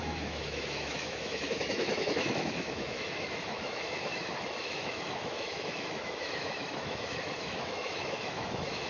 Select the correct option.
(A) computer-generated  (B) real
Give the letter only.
A